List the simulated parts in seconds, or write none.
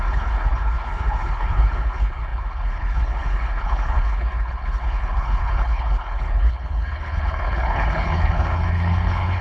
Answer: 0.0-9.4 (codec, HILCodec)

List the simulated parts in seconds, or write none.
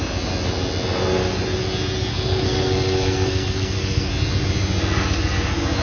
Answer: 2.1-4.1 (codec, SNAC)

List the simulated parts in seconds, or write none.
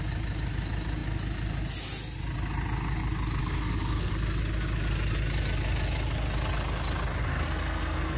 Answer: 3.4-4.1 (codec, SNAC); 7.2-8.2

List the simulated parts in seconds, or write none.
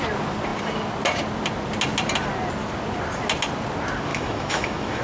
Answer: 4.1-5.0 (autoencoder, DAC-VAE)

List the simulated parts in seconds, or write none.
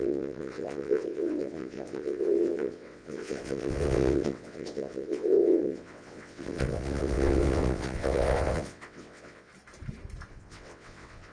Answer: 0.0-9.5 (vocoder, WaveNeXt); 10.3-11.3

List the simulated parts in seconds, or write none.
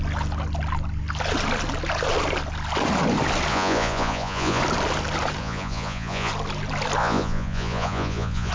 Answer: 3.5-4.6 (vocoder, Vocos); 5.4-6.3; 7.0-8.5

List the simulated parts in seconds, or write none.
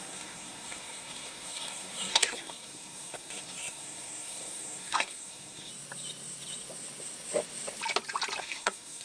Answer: 0.0-5.7 (codec, SNAC); 8.4-9.0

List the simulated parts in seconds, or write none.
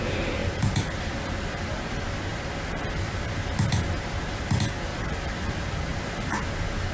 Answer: 0.4-1.0 (vocoder, BigVGAN v2); 2.3-4.5; 4.9-5.5; 5.9-6.9